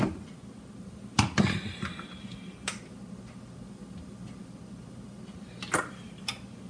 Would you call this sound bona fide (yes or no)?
yes